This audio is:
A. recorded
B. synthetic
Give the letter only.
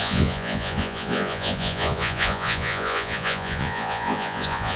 B